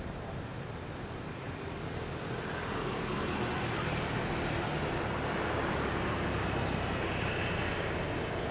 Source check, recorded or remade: recorded